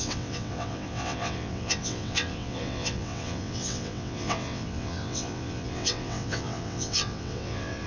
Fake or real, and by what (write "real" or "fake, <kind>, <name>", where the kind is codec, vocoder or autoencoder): fake, vocoder, WaveNeXt